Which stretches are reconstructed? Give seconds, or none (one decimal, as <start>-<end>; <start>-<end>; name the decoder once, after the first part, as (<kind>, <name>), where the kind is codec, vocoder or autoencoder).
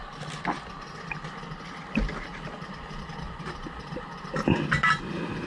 none